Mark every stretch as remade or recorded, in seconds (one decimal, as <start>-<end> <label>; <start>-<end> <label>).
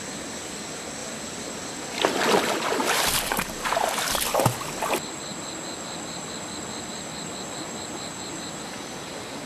0.0-1.0 recorded; 1.0-4.1 remade; 4.1-9.5 recorded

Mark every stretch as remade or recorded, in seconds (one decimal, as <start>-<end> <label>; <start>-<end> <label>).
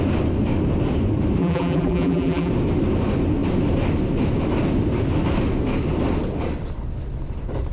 0.0-1.4 recorded; 1.4-2.5 remade; 2.5-7.7 recorded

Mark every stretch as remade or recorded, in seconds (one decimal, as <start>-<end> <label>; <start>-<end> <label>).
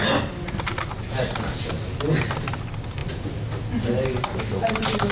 0.0-5.1 recorded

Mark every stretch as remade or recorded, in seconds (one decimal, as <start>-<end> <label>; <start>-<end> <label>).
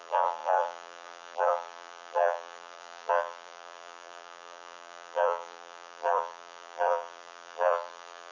0.0-8.3 remade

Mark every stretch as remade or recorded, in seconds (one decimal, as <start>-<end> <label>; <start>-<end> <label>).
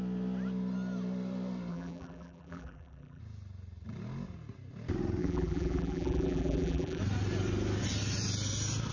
0.0-1.7 recorded; 1.7-3.2 remade; 3.2-5.2 recorded; 5.2-7.0 remade; 7.0-8.9 recorded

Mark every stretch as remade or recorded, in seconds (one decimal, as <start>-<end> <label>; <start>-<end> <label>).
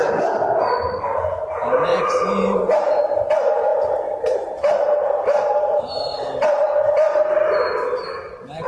0.0-1.9 recorded; 1.9-3.0 remade; 3.0-3.7 recorded; 3.7-6.8 remade; 6.8-8.7 recorded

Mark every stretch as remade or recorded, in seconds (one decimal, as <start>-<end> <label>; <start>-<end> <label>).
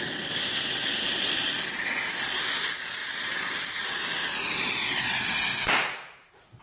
0.0-3.0 recorded; 3.0-3.9 remade; 3.9-5.5 recorded; 5.5-6.6 remade